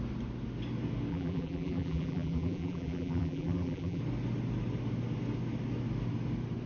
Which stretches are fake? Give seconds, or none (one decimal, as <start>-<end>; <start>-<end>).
1.1-4.0

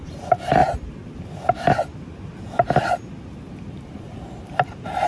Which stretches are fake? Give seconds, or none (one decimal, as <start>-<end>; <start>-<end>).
0.0-0.6; 3.7-5.1

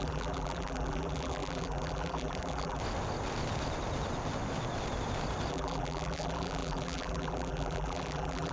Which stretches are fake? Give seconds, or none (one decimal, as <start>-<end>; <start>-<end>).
0.0-2.8; 5.5-8.5

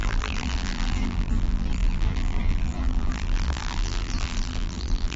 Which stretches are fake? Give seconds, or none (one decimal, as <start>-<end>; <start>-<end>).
0.0-5.2

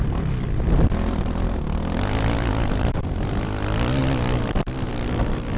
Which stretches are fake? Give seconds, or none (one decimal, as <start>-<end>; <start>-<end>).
none